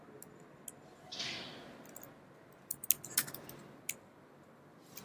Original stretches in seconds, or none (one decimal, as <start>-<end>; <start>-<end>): 0.0-3.6